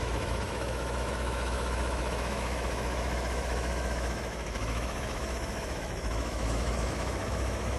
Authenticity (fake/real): fake